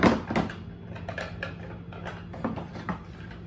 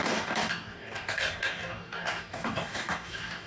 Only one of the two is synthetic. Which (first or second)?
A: second